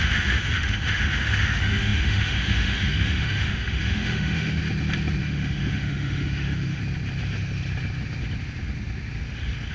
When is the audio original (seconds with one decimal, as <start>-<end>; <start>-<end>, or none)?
4.6-5.2; 6.8-9.7